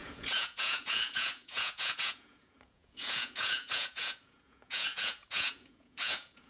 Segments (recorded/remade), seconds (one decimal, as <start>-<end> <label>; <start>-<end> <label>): 0.0-6.5 remade